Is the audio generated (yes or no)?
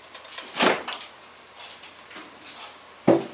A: no